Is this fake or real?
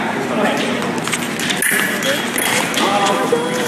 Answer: real